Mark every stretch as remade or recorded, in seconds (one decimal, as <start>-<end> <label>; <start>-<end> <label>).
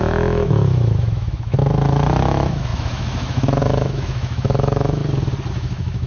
0.0-1.6 remade; 1.6-2.2 recorded; 2.2-5.0 remade; 5.0-5.5 recorded; 5.5-6.1 remade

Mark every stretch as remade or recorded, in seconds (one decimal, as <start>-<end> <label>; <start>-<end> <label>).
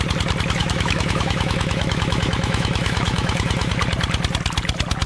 0.0-0.6 recorded; 0.6-3.7 remade; 3.7-5.1 recorded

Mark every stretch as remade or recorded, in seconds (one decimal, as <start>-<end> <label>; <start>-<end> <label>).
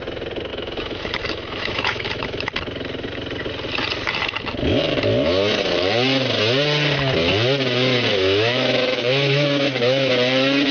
0.0-0.5 recorded; 0.5-2.5 remade; 2.5-8.1 recorded; 8.1-10.1 remade; 10.1-10.7 recorded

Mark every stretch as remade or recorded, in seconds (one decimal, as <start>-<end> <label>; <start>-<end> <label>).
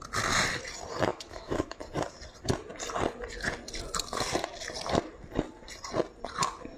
0.0-1.1 recorded; 1.1-1.8 remade; 1.8-6.8 recorded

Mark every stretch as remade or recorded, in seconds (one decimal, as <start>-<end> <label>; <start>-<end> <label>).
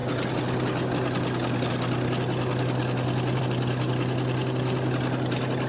0.0-5.7 recorded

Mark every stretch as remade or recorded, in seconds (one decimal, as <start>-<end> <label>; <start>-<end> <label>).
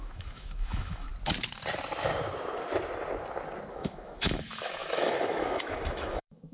0.0-1.1 remade; 1.1-3.7 recorded; 3.7-6.5 remade